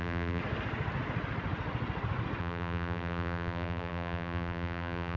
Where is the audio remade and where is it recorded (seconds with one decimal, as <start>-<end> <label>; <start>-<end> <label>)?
0.0-0.4 remade; 0.4-2.4 recorded; 2.4-5.2 remade